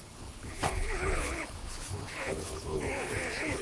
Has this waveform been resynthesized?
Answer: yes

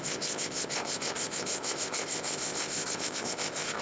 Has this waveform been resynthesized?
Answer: yes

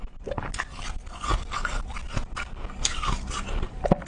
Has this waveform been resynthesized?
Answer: no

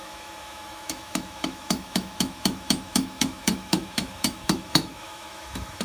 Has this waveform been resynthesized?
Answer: yes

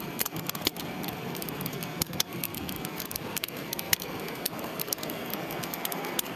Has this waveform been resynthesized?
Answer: yes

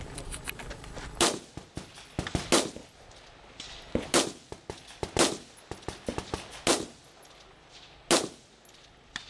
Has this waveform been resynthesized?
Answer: no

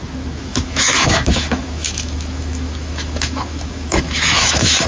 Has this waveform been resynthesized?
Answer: yes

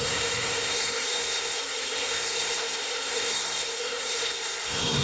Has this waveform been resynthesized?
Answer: yes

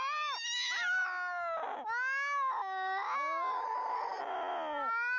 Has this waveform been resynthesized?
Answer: no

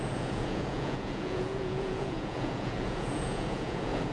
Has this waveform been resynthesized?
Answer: yes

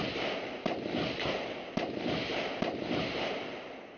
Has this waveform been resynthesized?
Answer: no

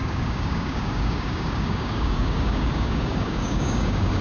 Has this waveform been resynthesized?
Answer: yes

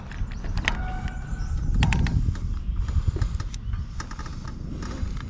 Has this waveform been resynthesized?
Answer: no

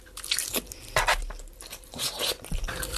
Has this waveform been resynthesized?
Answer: no